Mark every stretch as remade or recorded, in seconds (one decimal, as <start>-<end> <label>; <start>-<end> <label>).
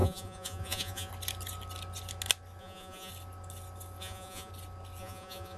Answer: 0.0-1.1 remade; 1.1-2.6 recorded; 2.6-3.1 remade; 3.1-4.0 recorded; 4.0-4.5 remade; 4.5-5.0 recorded; 5.0-5.6 remade